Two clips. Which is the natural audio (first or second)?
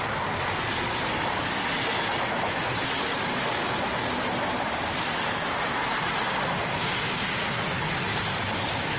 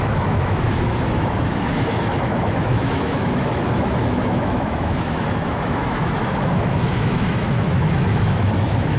first